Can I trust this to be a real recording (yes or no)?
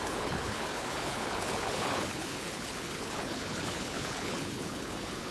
no